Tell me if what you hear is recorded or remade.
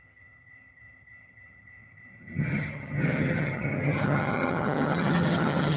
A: remade